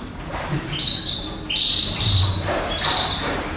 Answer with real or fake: fake